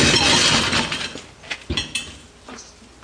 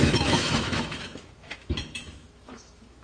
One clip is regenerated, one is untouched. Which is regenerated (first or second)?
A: second